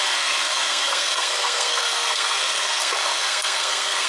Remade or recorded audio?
remade